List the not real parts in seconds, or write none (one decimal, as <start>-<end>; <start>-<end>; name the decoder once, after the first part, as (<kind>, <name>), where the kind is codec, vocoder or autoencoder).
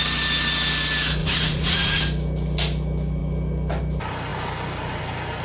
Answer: 1.2-2.0 (vocoder, Vocos)